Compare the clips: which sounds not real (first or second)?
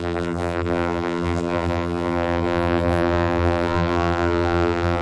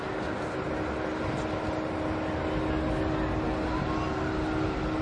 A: first